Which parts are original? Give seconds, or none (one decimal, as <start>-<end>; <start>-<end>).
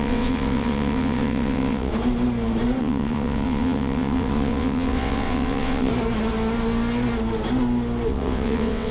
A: 1.9-2.8; 5.9-8.1